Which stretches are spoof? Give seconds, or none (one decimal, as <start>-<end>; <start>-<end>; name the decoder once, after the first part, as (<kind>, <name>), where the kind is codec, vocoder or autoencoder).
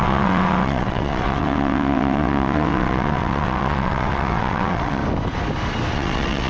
0.0-5.0 (vocoder, WaveNeXt); 5.9-6.5